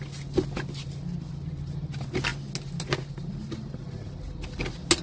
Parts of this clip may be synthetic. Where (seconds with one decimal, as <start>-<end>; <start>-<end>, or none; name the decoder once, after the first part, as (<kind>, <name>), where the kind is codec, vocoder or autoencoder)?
none